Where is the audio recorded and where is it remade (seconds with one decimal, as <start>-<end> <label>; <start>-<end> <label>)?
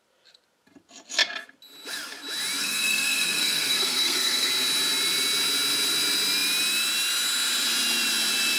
0.0-2.6 recorded; 2.6-4.5 remade; 4.5-8.6 recorded